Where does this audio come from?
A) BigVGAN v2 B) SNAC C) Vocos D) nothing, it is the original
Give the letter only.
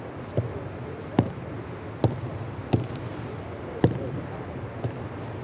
D